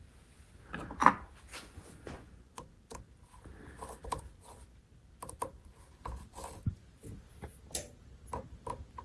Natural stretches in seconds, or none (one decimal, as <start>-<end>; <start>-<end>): 0.0-1.5; 2.7-9.0